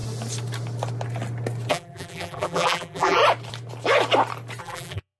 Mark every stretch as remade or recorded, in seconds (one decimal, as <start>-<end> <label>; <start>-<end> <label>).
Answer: 0.0-1.7 recorded; 1.7-3.2 remade; 3.2-4.6 recorded; 4.6-5.2 remade